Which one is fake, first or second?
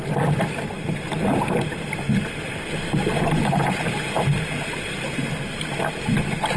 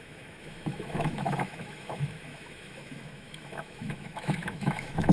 second